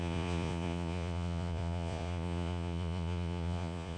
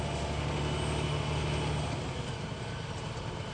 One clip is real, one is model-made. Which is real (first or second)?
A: second